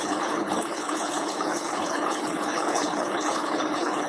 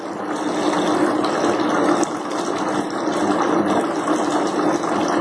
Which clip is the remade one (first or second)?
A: first